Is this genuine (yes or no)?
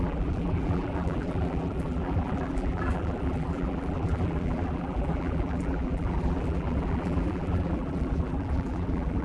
no